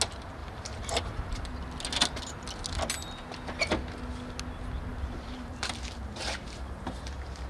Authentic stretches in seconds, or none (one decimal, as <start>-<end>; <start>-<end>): 0.0-0.4; 1.5-4.9